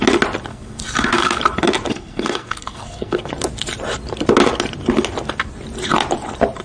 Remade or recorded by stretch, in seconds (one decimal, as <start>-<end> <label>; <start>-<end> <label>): 0.0-0.5 recorded; 0.5-1.4 remade; 1.4-1.9 recorded; 1.9-3.3 remade; 3.3-6.6 recorded

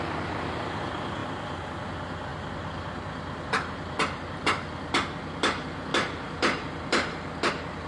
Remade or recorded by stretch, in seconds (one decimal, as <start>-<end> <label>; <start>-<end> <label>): 0.0-7.9 recorded

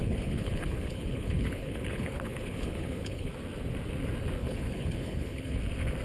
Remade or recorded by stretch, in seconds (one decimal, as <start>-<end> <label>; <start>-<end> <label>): 0.0-3.3 remade; 3.3-4.4 recorded; 4.4-5.6 remade; 5.6-6.0 recorded

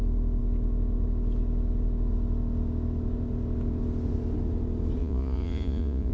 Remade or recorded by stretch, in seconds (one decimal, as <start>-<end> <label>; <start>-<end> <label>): 0.0-5.0 recorded; 5.0-6.1 remade

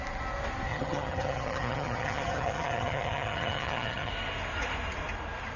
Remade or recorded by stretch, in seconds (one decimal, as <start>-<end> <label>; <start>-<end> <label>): 0.0-0.7 recorded; 0.7-4.1 remade; 4.1-5.6 recorded

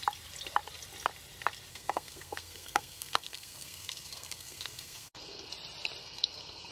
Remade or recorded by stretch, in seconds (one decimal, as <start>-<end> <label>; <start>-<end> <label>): 0.0-1.7 recorded; 1.7-5.5 remade; 5.5-6.0 recorded; 6.0-6.7 remade

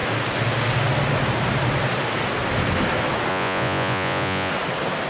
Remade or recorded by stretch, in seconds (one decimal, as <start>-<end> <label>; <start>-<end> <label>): 0.0-3.3 recorded; 3.3-4.5 remade; 4.5-5.1 recorded